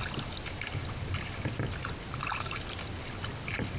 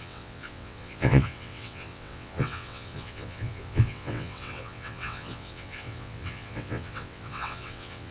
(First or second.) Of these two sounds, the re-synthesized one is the second